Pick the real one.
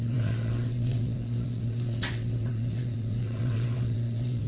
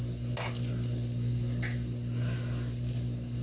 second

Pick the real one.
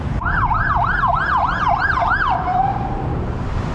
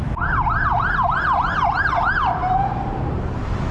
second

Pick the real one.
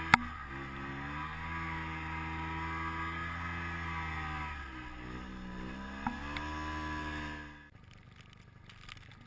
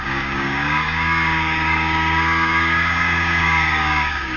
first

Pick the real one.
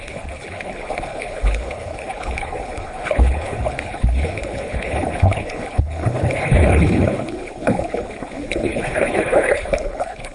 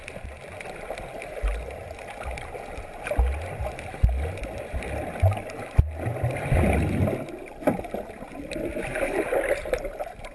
second